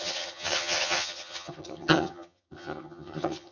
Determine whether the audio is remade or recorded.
remade